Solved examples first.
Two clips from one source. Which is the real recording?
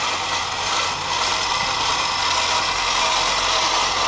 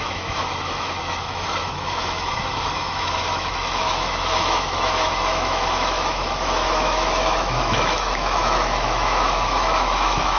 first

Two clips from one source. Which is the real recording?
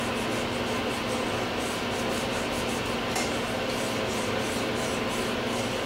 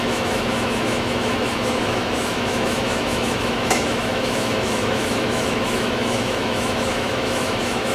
first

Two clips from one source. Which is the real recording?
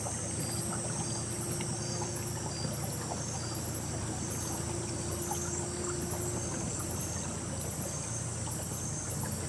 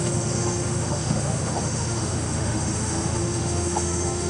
first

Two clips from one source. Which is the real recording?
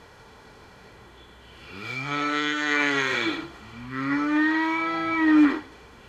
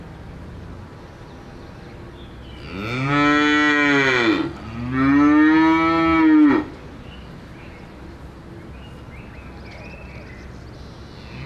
second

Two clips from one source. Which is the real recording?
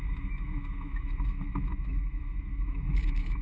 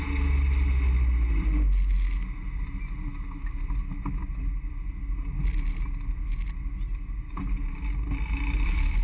second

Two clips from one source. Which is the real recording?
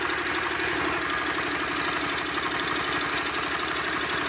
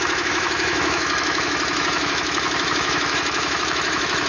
first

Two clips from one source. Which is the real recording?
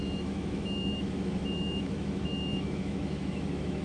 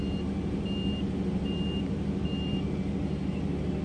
second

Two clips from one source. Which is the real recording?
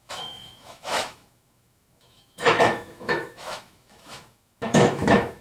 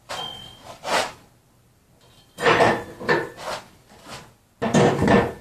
second